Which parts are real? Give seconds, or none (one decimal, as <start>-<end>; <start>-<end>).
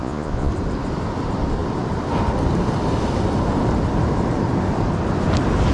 0.5-5.7